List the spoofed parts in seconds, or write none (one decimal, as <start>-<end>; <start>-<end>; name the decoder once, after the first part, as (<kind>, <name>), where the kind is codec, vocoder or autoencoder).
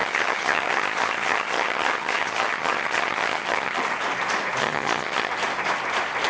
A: 0.0-3.8 (vocoder, HiFi-GAN); 4.6-5.3